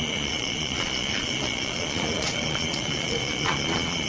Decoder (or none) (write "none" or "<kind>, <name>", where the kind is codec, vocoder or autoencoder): vocoder, Vocos